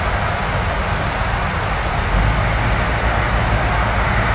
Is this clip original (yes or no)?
yes